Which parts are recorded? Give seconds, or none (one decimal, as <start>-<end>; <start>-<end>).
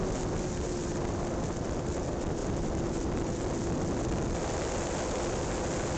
0.0-2.4; 3.3-6.0